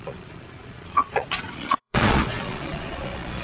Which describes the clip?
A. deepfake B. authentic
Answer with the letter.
A